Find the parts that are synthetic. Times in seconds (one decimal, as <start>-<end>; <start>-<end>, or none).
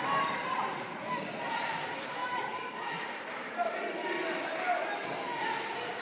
2.2-2.9